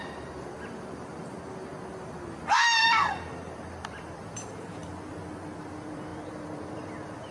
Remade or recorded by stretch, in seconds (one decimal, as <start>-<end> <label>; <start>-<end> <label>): 0.0-1.7 remade; 1.7-2.8 recorded; 2.8-4.8 remade; 4.8-5.6 recorded; 5.6-7.3 remade